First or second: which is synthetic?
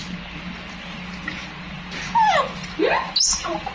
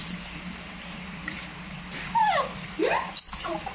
second